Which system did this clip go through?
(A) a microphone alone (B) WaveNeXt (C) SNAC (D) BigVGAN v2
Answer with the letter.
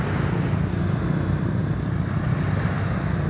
A